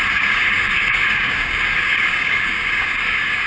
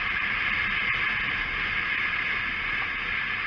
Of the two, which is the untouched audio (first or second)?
second